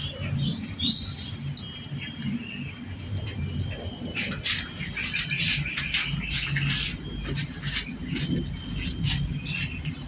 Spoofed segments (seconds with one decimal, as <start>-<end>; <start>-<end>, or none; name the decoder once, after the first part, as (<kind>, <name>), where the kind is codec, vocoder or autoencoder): none